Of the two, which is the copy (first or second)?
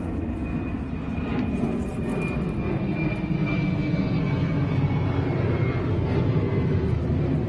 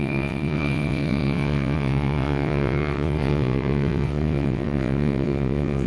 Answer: second